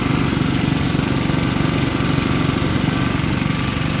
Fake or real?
real